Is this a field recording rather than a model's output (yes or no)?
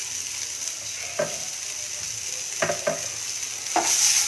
yes